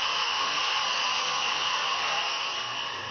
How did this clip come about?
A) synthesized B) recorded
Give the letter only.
A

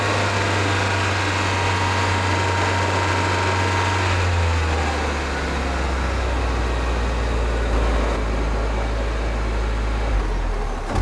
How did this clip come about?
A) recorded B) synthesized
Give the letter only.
A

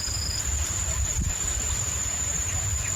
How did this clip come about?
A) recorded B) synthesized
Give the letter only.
B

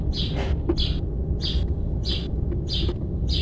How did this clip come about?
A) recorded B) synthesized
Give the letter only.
A